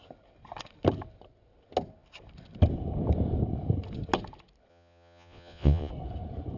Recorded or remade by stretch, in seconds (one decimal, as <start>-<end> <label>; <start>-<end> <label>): 0.0-4.7 recorded; 4.7-5.9 remade; 5.9-6.6 recorded